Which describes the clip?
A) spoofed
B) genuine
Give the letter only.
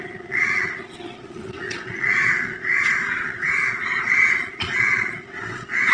A